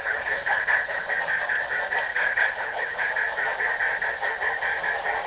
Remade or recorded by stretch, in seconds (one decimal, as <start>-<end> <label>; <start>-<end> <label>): 0.0-1.1 remade; 1.1-2.1 recorded; 2.1-3.1 remade; 3.1-5.3 recorded